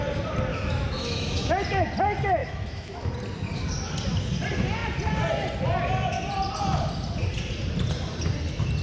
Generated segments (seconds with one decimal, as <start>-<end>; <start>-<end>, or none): 0.5-1.5; 2.4-3.1